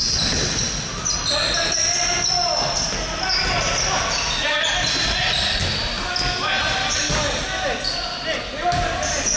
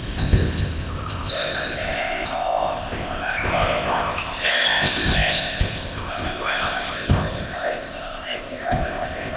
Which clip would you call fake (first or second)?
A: second